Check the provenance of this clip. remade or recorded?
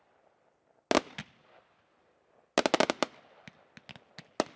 recorded